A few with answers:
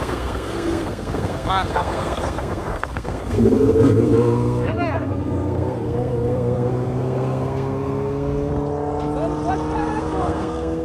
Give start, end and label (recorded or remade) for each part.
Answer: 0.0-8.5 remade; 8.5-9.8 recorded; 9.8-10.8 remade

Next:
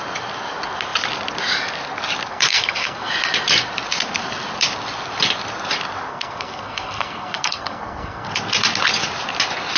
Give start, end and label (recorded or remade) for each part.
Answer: 0.0-2.3 recorded; 2.3-3.1 remade; 3.1-6.1 recorded; 6.1-8.3 remade; 8.3-9.8 recorded

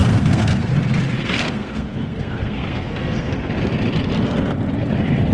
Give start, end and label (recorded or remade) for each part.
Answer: 0.0-0.7 remade; 0.7-1.2 recorded; 1.2-3.5 remade; 3.5-5.3 recorded

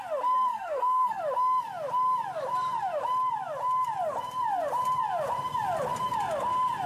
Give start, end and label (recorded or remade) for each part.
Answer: 0.0-0.5 recorded; 0.5-1.2 remade; 1.2-6.9 recorded

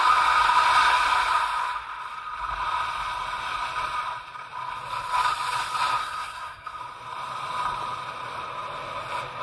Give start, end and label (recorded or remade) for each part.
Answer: 0.0-6.0 recorded; 6.0-6.8 remade; 6.8-9.4 recorded

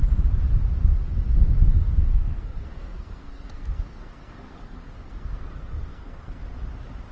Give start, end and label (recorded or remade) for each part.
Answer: 0.0-2.1 recorded; 2.1-6.4 remade; 6.4-7.1 recorded

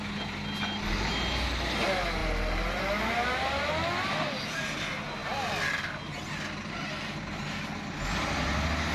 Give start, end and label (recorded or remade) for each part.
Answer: 0.0-8.9 recorded

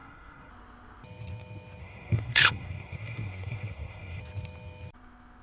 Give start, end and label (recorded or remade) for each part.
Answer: 0.0-0.5 remade; 0.5-1.8 recorded; 1.8-4.2 remade; 4.2-5.4 recorded